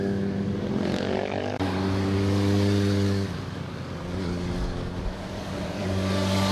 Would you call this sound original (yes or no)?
no